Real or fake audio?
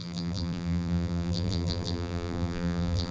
fake